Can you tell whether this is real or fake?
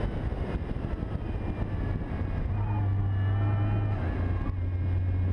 real